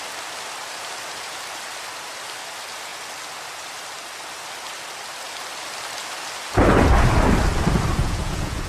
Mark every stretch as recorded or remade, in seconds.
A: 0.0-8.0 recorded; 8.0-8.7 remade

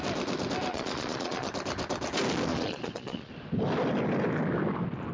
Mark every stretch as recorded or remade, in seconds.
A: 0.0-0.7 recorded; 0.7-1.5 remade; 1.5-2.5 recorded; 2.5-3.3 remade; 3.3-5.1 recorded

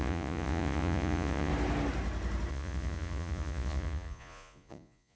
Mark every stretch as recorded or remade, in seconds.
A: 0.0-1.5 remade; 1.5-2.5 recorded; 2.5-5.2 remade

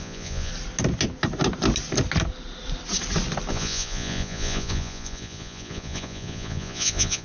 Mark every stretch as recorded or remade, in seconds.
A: 0.0-0.5 remade; 0.5-3.5 recorded; 3.5-7.2 remade

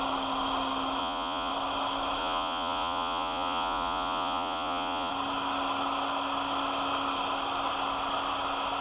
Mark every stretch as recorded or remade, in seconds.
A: 0.0-1.0 recorded; 1.0-1.5 remade; 1.5-2.2 recorded; 2.2-5.1 remade; 5.1-8.8 recorded

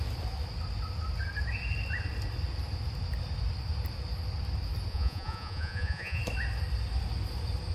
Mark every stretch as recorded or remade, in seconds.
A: 0.0-4.9 recorded; 4.9-6.2 remade; 6.2-7.7 recorded

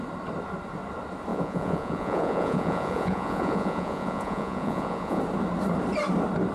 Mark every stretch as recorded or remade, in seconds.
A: 0.0-1.3 recorded; 1.3-5.2 remade; 5.2-6.5 recorded